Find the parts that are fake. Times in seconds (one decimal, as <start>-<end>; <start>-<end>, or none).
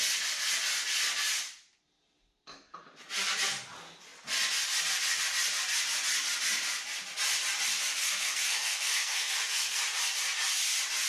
8.0-9.8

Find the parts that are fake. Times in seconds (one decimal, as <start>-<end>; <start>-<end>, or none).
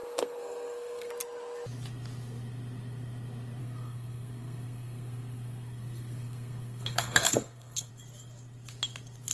0.0-1.1; 3.6-7.9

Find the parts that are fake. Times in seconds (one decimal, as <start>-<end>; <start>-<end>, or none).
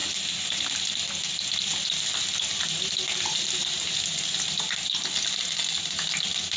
none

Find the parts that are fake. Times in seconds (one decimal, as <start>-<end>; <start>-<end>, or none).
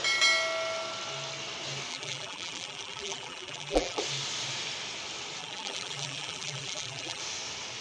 1.9-4.0; 5.4-7.2